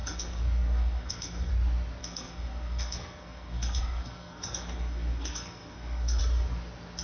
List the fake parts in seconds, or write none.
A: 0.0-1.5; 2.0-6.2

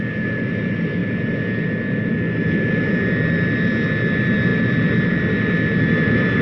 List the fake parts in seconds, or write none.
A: none

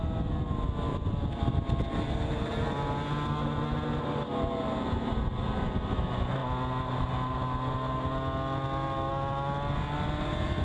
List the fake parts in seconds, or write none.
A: 0.9-1.5